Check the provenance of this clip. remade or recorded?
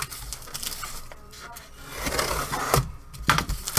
recorded